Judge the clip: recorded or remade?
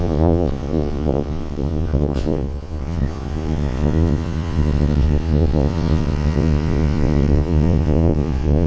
remade